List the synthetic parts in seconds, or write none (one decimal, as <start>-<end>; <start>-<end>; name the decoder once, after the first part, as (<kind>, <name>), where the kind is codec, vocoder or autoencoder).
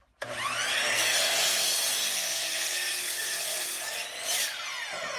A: 0.7-3.8 (codec, SNAC)